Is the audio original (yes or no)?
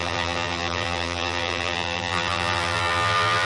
no